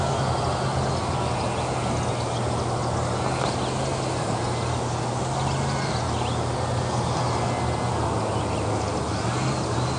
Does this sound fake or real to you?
real